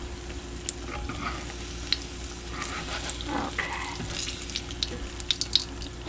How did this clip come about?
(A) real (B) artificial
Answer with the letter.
A